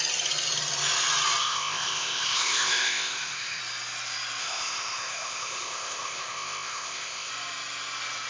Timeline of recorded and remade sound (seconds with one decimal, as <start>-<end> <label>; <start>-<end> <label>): 0.0-1.4 recorded; 1.4-3.6 remade; 3.6-4.4 recorded; 4.4-7.3 remade; 7.3-8.3 recorded